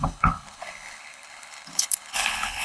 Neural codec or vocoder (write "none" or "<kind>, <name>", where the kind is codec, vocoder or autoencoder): codec, HILCodec